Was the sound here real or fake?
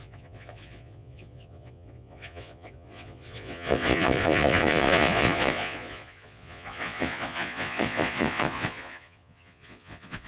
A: fake